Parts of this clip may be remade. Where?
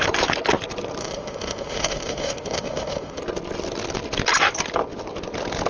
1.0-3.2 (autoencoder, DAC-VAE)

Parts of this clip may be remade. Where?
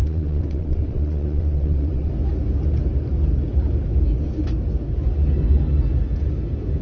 0.0-2.1 (vocoder, WaveNeXt)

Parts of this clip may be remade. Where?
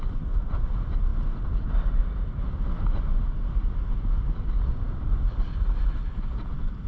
none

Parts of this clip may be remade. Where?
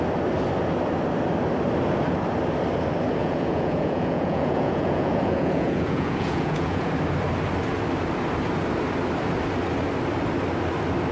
3.2-6.9 (vocoder, Vocos)